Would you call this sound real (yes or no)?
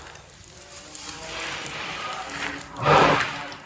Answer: no